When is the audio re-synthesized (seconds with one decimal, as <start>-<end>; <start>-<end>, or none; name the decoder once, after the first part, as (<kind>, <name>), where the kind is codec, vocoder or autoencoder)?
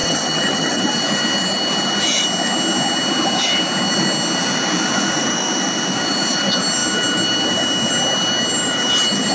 0.0-0.8 (vocoder, HiFi-GAN)